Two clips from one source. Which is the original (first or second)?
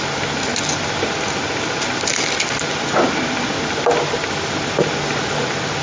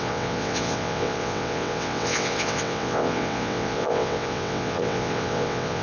first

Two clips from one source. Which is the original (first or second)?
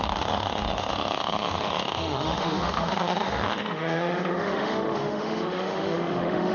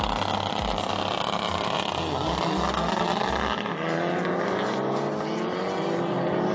second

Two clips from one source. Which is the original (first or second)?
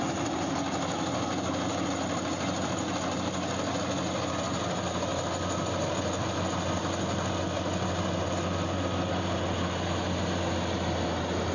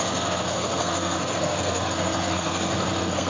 first